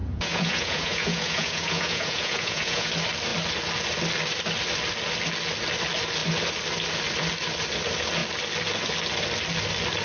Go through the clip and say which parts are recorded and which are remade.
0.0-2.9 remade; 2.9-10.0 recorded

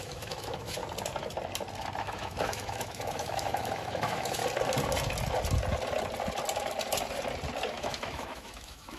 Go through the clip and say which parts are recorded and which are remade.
0.0-0.8 remade; 0.8-2.0 recorded; 2.0-4.4 remade; 4.4-7.7 recorded; 7.7-9.0 remade